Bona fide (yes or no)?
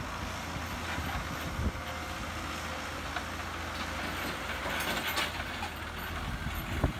yes